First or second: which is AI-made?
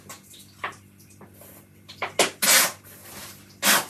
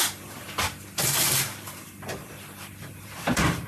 second